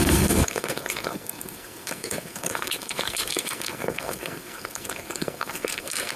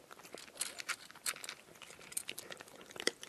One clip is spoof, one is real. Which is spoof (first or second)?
first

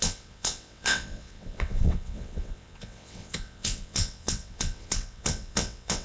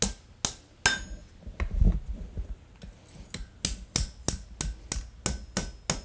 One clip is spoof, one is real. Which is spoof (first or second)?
first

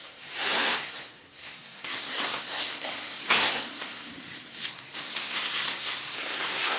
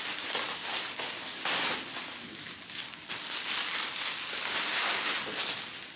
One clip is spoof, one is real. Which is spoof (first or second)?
first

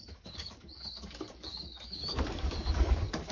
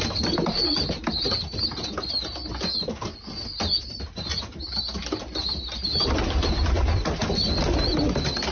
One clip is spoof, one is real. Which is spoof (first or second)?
first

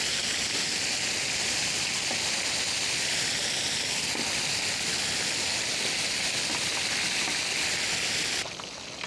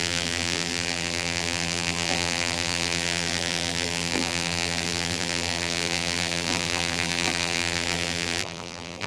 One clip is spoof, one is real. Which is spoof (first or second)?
second